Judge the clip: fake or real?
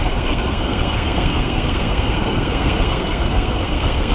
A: fake